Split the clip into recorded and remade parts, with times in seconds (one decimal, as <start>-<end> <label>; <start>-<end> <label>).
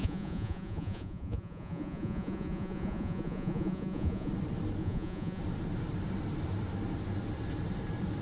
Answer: 0.0-4.3 remade; 4.3-4.8 recorded; 4.8-5.4 remade; 5.4-8.2 recorded